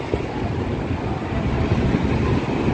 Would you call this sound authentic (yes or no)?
yes